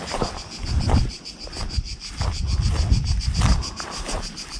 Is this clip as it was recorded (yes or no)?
yes